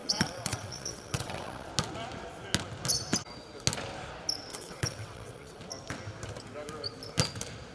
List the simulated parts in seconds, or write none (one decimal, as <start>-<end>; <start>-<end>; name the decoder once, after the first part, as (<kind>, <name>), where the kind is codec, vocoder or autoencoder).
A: 0.0-1.7 (vocoder, WaveNeXt); 4.5-5.6